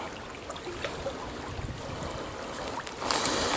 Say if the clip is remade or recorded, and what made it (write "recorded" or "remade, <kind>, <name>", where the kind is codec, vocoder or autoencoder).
recorded